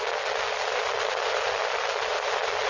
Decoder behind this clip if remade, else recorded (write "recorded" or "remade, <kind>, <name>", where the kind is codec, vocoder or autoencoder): recorded